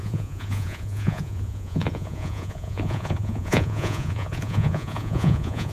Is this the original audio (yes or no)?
no